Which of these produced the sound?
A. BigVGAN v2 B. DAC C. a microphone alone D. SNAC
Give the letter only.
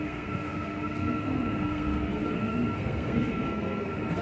D